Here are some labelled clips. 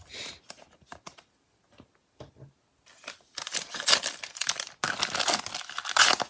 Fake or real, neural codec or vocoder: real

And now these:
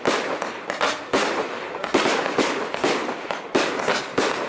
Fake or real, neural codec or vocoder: real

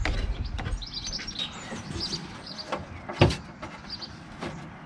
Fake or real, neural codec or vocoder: real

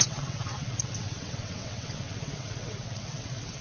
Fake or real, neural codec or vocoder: fake, vocoder, WaveNeXt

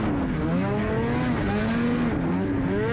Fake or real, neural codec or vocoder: real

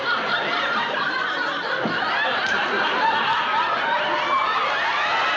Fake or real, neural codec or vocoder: real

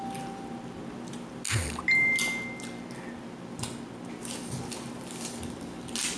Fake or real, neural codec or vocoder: real